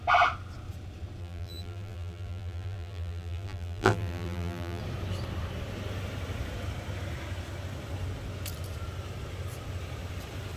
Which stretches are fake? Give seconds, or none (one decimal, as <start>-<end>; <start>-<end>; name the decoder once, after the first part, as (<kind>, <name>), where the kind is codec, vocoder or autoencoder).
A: 1.2-4.8 (vocoder, BigVGAN v2)